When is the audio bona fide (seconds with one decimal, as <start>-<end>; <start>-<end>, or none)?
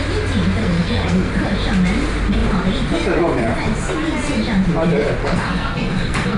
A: 0.0-0.6; 1.3-5.2